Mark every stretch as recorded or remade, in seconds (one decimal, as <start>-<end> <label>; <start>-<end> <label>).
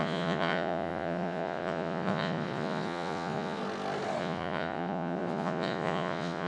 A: 0.0-3.6 remade; 3.6-4.2 recorded; 4.2-6.5 remade